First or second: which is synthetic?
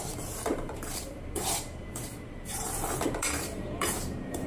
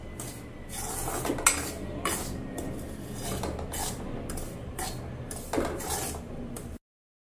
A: first